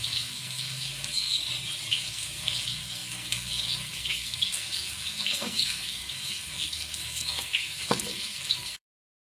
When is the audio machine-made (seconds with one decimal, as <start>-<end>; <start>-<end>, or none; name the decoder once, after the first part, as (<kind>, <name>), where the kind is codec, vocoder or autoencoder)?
0.0-1.4 (codec, SNAC); 1.9-9.2